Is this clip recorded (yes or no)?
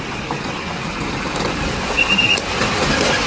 yes